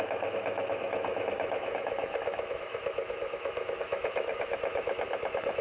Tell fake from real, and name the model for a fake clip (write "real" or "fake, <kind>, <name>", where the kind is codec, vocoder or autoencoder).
fake, autoencoder, DAC-VAE